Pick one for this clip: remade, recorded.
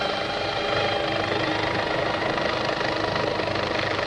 recorded